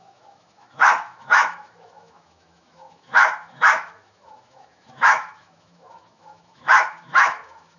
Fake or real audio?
fake